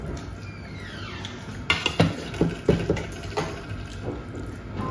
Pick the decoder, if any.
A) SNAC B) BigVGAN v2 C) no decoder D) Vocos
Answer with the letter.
C